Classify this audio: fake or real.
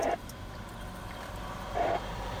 fake